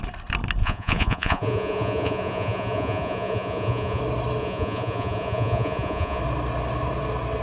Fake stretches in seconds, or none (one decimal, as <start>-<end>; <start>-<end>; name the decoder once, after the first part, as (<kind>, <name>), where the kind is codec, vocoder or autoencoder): 0.6-4.0 (vocoder, Vocos); 4.4-6.2

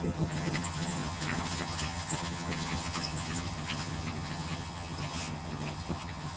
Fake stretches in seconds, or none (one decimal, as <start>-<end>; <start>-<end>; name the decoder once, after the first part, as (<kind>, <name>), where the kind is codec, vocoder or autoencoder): 0.0-6.4 (vocoder, HiFi-GAN)

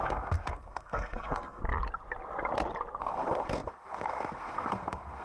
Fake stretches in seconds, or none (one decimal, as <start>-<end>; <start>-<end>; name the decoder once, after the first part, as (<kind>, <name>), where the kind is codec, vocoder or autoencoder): 0.0-1.6 (codec, SNAC); 3.0-5.2

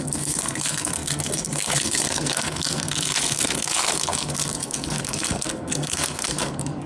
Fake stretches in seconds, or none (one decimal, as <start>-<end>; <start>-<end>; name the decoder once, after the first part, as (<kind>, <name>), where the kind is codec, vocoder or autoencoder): 0.0-6.9 (codec, SNAC)

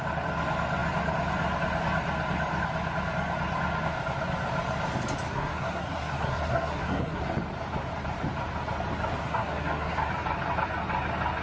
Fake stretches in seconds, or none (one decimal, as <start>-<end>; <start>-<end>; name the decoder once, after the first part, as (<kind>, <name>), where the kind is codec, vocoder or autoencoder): 5.3-7.2 (codec, SNAC); 9.2-10.1